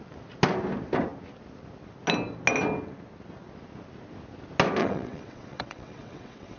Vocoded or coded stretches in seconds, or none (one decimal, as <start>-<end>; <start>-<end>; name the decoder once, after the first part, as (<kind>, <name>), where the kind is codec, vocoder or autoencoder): 4.8-6.6 (vocoder, WaveNeXt)